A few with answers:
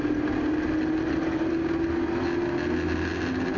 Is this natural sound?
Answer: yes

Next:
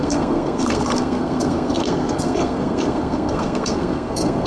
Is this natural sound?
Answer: no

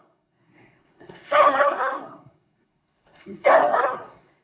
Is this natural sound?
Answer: no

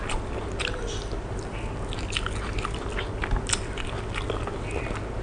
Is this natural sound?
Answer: yes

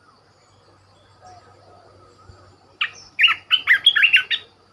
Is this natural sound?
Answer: yes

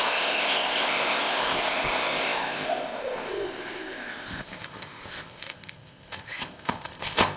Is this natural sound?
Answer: no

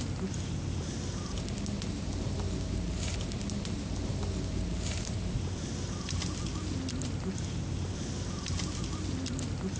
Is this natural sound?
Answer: yes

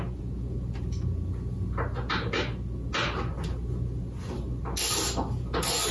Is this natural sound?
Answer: yes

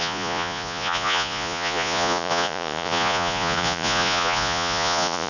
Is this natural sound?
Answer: no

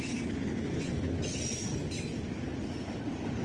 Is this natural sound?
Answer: yes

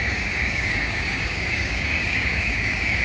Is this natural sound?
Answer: no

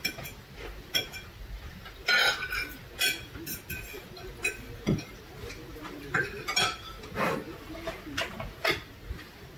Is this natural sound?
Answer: yes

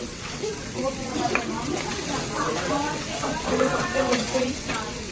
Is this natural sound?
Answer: no